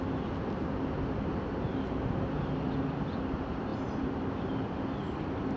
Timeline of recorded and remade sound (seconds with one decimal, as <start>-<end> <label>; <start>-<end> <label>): 0.0-5.6 recorded

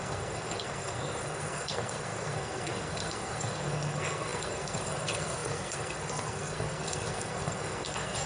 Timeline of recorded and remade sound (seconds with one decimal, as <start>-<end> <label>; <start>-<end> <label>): 0.0-8.3 remade

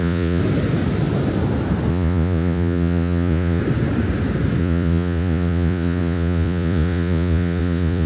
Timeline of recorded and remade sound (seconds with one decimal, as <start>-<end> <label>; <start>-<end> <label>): 0.0-0.4 remade; 0.4-1.9 recorded; 1.9-3.6 remade; 3.6-4.6 recorded; 4.6-8.1 remade